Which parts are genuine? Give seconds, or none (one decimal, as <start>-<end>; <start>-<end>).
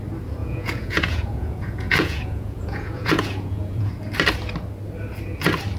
0.0-0.4; 3.9-5.8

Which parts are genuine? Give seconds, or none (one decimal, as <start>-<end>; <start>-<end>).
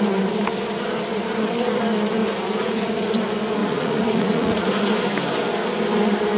0.0-2.2; 3.1-3.6; 4.7-6.4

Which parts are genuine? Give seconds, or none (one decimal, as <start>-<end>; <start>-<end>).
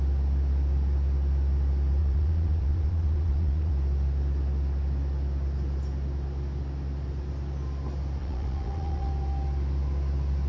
0.0-2.0; 3.7-8.2; 9.1-10.5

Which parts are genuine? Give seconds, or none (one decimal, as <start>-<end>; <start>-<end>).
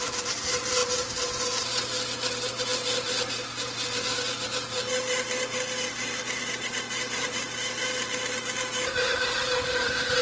0.0-10.2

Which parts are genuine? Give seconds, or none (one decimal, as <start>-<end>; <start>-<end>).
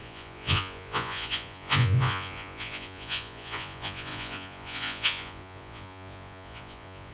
none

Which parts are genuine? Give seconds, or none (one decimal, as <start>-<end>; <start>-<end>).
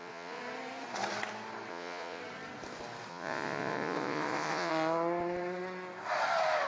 0.4-1.7; 2.2-3.1; 4.7-6.7